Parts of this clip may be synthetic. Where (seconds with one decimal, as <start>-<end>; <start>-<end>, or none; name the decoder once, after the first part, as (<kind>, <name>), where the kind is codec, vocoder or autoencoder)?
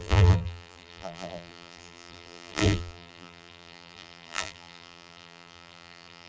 0.0-6.3 (vocoder, BigVGAN v2)